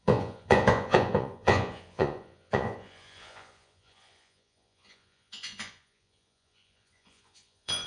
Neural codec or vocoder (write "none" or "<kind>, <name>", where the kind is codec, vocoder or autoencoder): vocoder, Vocos